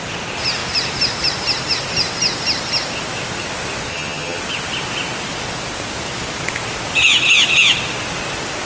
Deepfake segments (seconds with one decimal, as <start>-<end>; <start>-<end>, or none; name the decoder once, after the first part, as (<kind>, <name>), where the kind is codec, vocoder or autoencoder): 3.9-4.4 (vocoder, HiFi-GAN)

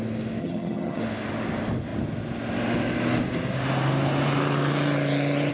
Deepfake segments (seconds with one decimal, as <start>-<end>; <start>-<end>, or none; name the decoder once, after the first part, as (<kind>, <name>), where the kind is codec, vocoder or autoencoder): 0.4-1.0 (vocoder, HiFi-GAN)

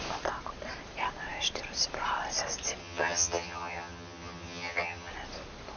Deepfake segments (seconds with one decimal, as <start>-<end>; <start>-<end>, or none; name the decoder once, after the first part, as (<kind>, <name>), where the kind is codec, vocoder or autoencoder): 2.8-5.1 (vocoder, HiFi-GAN)

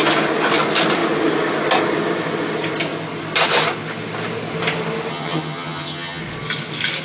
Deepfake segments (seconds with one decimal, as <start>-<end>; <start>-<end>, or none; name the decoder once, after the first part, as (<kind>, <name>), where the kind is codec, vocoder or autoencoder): 5.1-6.2 (vocoder, HiFi-GAN)

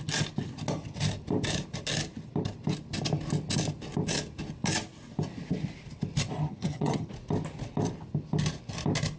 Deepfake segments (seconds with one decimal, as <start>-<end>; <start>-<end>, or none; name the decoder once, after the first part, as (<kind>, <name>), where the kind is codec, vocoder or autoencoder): 6.4-7.1 (vocoder, HiFi-GAN)

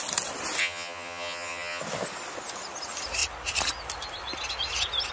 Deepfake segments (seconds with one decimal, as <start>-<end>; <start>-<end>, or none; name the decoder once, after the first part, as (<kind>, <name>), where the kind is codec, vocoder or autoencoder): 0.6-1.8 (vocoder, HiFi-GAN)

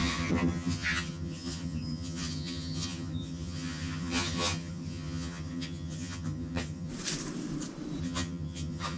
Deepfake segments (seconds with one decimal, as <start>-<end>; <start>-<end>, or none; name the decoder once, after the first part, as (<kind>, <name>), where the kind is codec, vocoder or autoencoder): 0.0-6.9 (vocoder, HiFi-GAN); 8.0-9.0